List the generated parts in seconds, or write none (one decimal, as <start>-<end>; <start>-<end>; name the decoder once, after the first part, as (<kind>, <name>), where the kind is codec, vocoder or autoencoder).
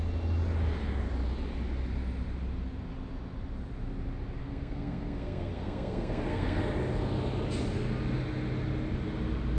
4.4-6.6 (codec, SNAC)